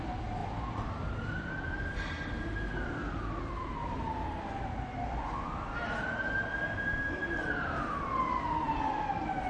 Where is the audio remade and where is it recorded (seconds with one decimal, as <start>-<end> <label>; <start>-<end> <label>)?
0.0-9.5 recorded